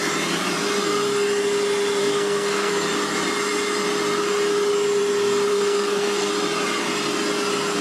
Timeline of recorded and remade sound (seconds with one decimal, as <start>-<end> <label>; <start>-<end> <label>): 0.0-2.0 recorded; 2.0-2.7 remade; 2.7-5.5 recorded; 5.5-6.3 remade; 6.3-7.8 recorded